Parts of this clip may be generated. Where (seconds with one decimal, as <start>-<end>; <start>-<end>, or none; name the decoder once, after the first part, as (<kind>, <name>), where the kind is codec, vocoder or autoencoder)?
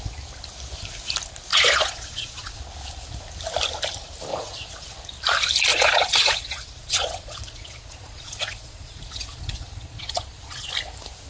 1.5-2.6 (vocoder, Vocos); 4.3-4.9; 5.7-10.7